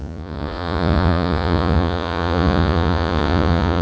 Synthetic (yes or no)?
yes